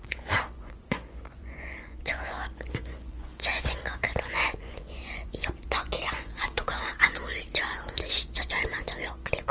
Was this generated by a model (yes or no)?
yes